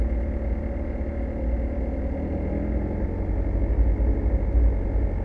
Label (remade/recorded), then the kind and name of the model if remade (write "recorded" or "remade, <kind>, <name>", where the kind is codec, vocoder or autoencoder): recorded